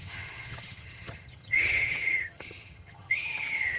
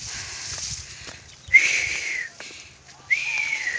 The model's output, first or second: first